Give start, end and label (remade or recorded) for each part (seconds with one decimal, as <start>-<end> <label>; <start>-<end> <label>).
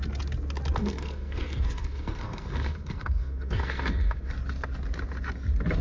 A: 0.0-0.8 recorded; 0.8-4.3 remade; 4.3-5.8 recorded